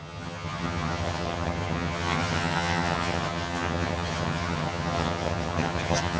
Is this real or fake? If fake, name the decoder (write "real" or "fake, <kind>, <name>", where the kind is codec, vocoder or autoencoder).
fake, vocoder, HiFi-GAN